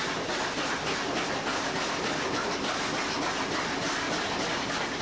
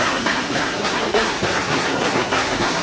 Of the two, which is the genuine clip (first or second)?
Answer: first